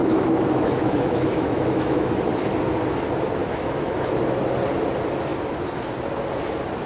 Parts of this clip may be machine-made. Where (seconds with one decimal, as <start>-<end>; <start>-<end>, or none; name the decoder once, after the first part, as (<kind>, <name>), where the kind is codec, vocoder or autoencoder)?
0.0-2.2 (autoencoder, DAC-VAE); 3.4-4.1